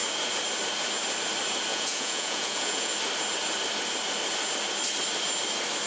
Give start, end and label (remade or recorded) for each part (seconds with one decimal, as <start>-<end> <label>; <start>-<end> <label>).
0.0-1.7 recorded; 1.7-2.9 remade; 2.9-5.9 recorded